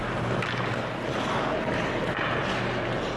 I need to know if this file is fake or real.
real